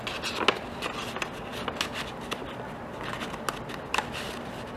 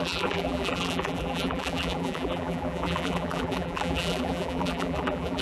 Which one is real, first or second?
first